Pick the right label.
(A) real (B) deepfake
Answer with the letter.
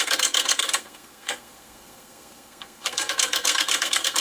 B